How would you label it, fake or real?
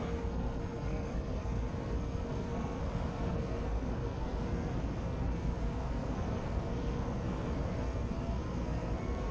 fake